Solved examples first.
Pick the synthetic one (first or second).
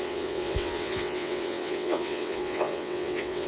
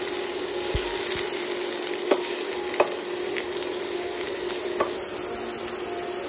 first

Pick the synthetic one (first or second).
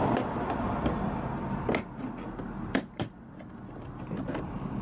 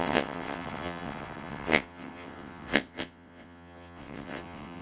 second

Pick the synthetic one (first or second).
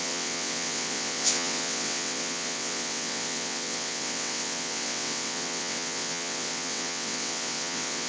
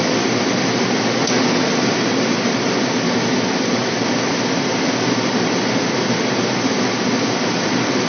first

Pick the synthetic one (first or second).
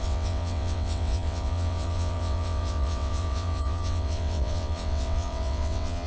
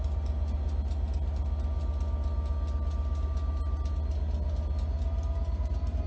first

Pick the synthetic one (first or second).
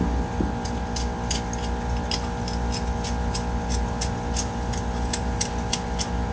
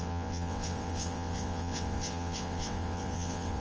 second